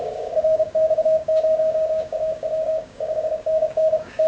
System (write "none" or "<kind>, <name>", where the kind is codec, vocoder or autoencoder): codec, DAC